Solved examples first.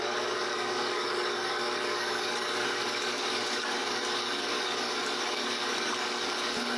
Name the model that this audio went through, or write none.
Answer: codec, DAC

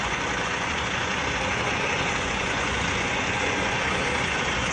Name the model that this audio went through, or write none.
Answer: vocoder, Vocos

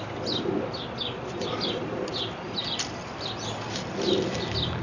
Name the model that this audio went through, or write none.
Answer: none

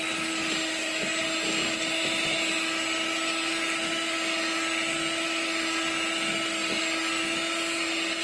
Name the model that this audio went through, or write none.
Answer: none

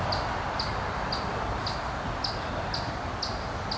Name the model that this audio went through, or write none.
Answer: none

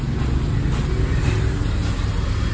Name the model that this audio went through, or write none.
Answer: none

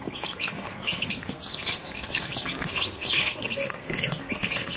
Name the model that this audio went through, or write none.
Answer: codec, SNAC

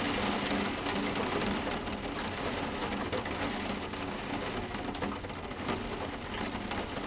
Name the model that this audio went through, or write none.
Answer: none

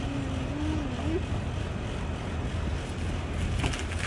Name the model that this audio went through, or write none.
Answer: none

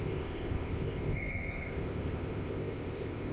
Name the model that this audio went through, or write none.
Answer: codec, ZipCodec